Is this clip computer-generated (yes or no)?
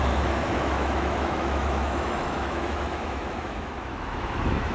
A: yes